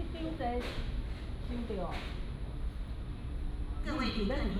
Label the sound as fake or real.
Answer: real